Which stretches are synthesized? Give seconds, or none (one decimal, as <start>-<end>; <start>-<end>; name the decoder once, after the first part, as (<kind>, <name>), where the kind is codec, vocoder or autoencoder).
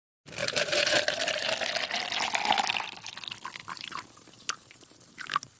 0.4-1.5 (vocoder, BigVGAN v2); 3.6-5.6